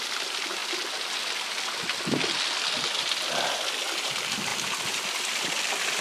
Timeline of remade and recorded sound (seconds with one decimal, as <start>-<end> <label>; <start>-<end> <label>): 0.0-6.0 recorded